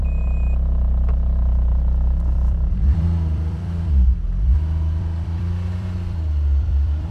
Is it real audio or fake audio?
fake